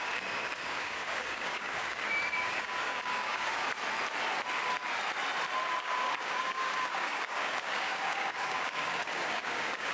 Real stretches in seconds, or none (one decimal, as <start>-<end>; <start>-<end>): 3.7-5.8